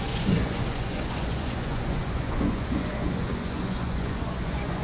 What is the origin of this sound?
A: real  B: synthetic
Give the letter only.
B